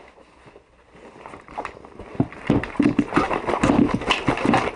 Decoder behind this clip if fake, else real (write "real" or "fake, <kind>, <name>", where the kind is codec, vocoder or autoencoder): real